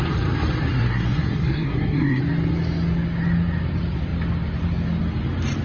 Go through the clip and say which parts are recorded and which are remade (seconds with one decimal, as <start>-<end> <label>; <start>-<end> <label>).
0.0-0.7 recorded; 0.7-2.2 remade; 2.2-5.6 recorded